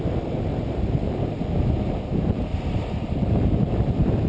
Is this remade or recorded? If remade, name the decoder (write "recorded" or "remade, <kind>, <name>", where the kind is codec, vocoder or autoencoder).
remade, vocoder, BigVGAN v2